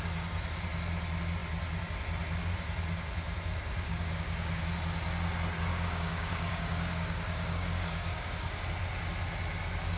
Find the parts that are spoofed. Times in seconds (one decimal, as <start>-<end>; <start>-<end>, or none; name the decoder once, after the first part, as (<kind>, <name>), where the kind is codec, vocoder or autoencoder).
3.9-4.6 (codec, DAC); 5.7-8.6